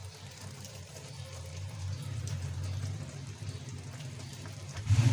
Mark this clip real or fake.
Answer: fake